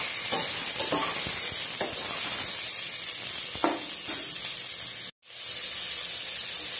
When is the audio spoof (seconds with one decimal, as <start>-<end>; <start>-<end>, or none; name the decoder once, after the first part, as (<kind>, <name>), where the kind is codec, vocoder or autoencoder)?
none